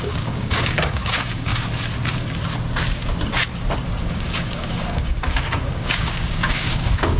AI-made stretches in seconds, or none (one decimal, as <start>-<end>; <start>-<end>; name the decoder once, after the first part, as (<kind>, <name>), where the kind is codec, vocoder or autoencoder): 0.0-1.5 (codec, DAC); 4.1-7.2